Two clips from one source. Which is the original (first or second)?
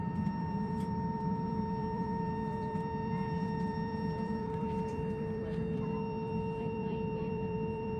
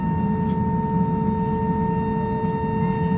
second